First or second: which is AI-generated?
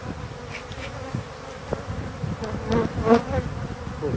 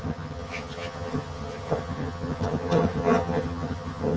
second